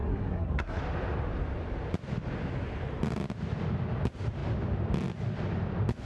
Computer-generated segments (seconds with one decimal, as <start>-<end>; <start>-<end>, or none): 0.0-0.8